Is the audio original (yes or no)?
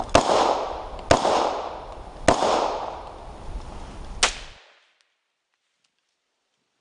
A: yes